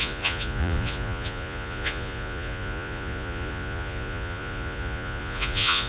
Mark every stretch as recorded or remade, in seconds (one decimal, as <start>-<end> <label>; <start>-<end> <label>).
0.0-5.9 remade